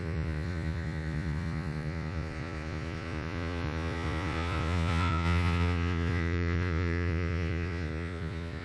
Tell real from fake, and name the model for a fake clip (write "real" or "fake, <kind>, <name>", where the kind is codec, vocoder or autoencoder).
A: fake, vocoder, Vocos